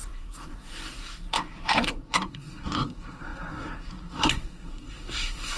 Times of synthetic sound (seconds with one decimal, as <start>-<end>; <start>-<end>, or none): 0.0-5.6